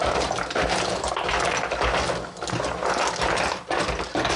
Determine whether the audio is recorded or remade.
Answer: recorded